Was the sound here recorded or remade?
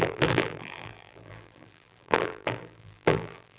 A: remade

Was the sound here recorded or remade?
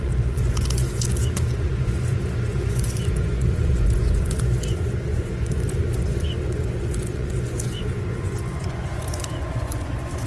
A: remade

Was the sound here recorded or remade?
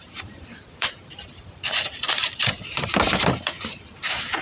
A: remade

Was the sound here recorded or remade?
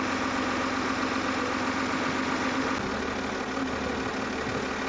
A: recorded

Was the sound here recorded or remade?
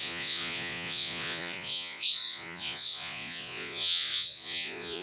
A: remade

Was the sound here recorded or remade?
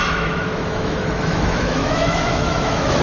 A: remade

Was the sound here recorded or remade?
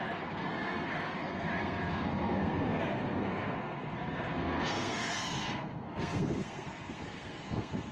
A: remade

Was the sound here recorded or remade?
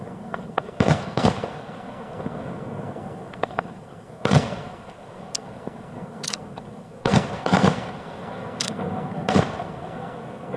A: remade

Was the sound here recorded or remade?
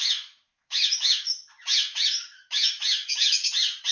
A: remade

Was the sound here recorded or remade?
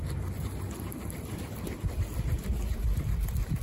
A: recorded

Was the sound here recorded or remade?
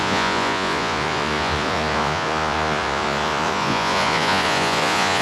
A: remade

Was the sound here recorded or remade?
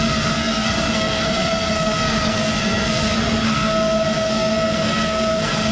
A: remade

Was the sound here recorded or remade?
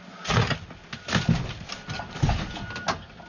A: recorded